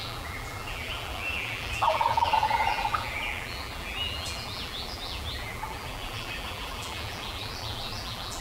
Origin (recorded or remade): remade